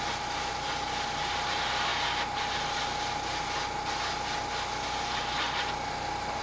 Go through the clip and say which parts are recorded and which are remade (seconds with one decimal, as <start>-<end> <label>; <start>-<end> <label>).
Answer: 0.0-6.4 recorded